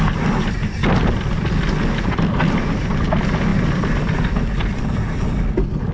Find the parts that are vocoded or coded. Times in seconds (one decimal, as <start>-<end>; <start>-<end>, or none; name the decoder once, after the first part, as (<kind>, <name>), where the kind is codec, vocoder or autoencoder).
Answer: none